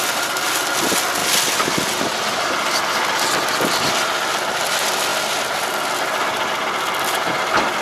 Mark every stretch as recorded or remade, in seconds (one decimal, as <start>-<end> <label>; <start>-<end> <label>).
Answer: 0.0-7.8 recorded